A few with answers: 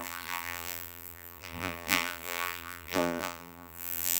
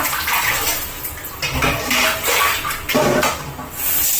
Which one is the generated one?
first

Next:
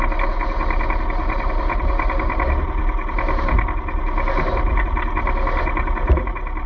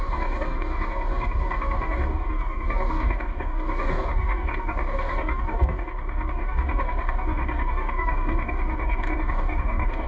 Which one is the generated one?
second